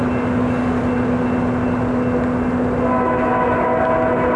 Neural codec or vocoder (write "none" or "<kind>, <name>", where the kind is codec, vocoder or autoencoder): none